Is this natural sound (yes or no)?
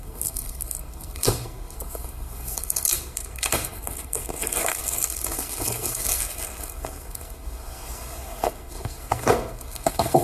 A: no